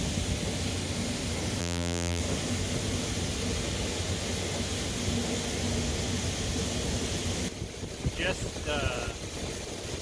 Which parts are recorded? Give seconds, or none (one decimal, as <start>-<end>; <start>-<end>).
0.0-1.6; 2.2-10.0